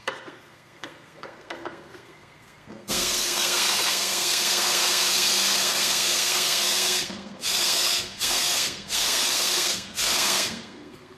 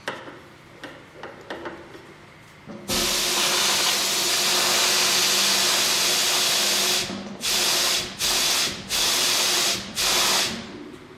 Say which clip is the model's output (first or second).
first